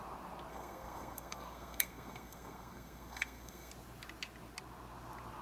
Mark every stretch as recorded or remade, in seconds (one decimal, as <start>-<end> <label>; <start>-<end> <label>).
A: 0.0-0.5 recorded; 0.5-3.7 remade; 3.7-5.4 recorded